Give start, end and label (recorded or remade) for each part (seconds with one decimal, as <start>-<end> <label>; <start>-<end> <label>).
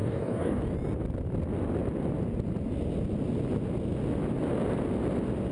0.0-0.6 remade; 0.6-5.5 recorded